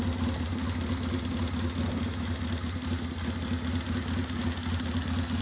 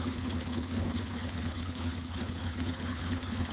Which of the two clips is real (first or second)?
first